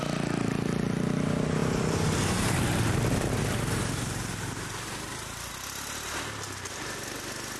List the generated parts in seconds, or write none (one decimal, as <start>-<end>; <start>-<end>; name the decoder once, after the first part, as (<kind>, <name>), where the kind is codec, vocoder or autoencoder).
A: 1.6-5.5 (vocoder, BigVGAN v2)